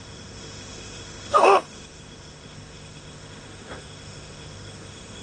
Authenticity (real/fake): fake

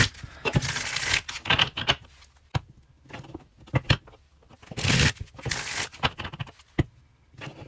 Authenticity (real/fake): real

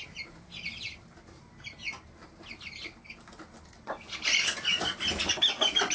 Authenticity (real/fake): real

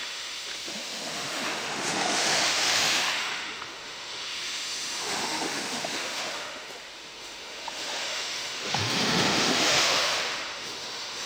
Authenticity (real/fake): fake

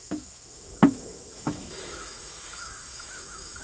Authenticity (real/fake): fake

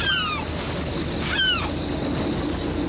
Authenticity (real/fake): real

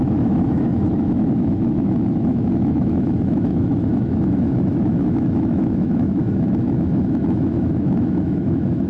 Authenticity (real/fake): fake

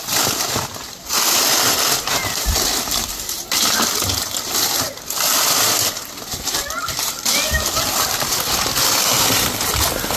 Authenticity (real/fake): real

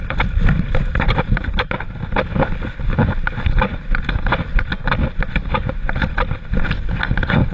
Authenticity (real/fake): real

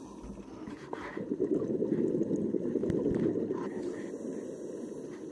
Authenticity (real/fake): real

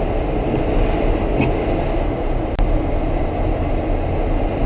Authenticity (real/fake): real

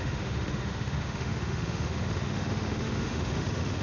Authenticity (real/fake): fake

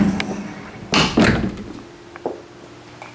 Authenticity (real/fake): real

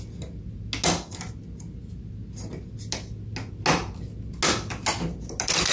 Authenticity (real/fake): real